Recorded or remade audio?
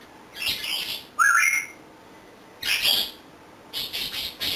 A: recorded